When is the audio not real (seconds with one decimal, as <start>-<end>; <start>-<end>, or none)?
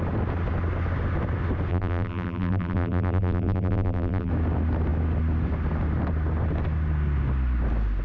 1.7-4.3